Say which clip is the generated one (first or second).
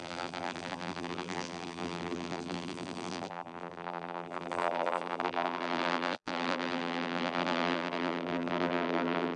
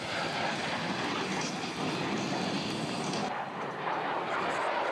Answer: first